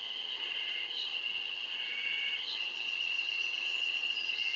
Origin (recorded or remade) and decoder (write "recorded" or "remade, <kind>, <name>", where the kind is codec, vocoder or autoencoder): remade, vocoder, HiFi-GAN